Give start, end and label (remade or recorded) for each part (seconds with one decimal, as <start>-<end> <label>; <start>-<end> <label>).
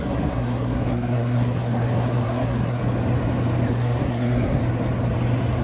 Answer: 0.0-2.8 remade; 2.8-3.7 recorded; 3.7-4.6 remade; 4.6-5.6 recorded